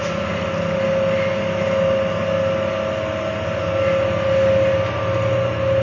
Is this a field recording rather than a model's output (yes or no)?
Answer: yes